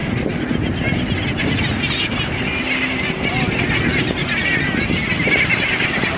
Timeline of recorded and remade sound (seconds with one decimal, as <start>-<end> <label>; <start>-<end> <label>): 0.0-6.2 recorded